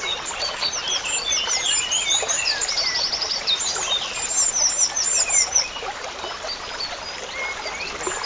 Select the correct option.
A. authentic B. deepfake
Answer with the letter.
A